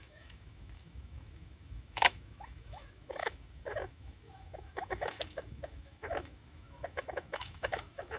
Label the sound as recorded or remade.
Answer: remade